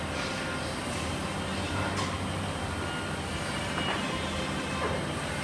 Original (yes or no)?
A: yes